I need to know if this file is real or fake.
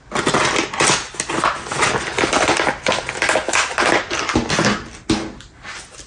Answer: real